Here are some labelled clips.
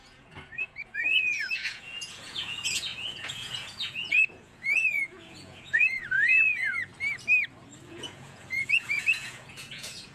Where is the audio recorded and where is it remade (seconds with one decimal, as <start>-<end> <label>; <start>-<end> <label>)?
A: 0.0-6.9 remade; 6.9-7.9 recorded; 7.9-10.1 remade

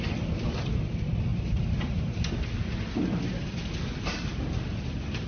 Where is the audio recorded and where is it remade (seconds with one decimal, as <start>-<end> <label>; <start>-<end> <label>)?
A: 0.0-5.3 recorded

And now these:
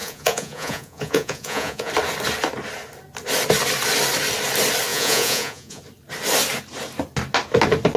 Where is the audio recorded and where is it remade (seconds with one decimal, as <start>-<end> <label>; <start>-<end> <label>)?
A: 0.0-1.9 remade; 1.9-4.9 recorded; 4.9-5.8 remade; 5.8-8.0 recorded